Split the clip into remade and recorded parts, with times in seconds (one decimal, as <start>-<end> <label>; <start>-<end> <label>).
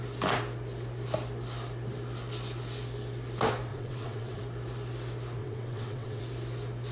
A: 0.0-3.7 recorded; 3.7-4.4 remade; 4.4-5.4 recorded; 5.4-6.2 remade; 6.2-6.9 recorded